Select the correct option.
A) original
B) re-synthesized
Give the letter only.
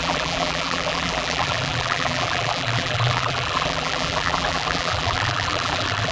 B